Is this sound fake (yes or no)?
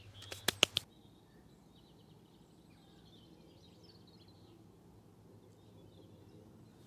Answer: no